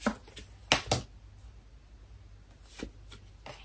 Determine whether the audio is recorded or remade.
recorded